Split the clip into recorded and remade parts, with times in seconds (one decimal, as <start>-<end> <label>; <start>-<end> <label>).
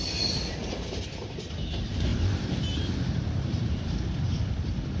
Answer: 0.0-2.1 recorded; 2.1-4.0 remade; 4.0-5.0 recorded